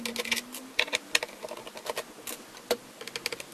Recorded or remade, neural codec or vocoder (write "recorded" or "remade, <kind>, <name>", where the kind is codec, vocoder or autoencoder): recorded